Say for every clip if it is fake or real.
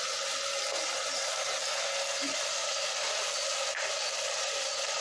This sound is real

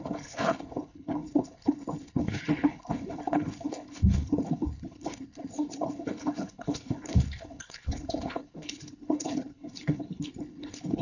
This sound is fake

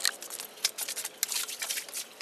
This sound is real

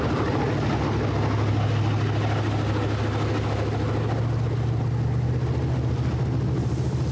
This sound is real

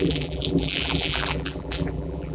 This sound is fake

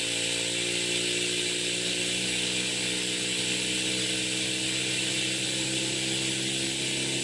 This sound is real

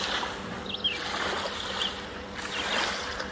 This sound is real